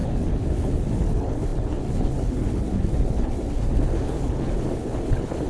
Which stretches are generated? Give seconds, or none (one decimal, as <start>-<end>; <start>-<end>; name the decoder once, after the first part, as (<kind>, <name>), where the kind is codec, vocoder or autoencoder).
0.0-5.5 (codec, HILCodec)